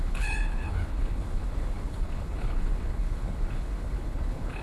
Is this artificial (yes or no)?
yes